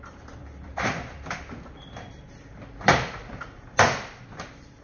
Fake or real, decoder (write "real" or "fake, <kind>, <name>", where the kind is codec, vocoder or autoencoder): fake, vocoder, BigVGAN v2